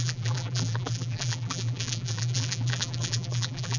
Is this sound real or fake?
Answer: fake